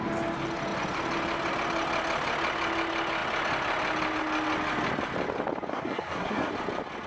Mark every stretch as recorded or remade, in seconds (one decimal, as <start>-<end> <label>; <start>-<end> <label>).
0.0-5.7 recorded; 5.7-6.5 remade; 6.5-7.1 recorded